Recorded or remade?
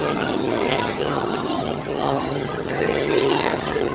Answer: remade